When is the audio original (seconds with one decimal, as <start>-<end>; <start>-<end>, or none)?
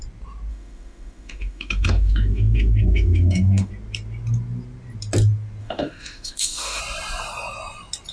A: 0.0-0.5; 3.7-5.6; 6.8-8.1